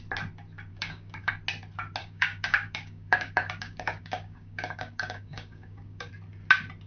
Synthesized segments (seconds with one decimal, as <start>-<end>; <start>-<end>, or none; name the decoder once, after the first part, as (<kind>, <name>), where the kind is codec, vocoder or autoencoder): 0.7-1.3 (codec, DAC); 2.0-6.1